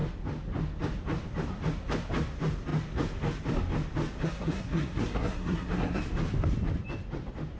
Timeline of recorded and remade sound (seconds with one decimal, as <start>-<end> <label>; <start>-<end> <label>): 0.0-4.2 recorded; 4.2-6.0 remade; 6.0-7.6 recorded